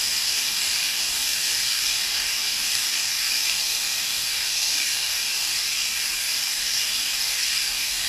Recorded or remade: remade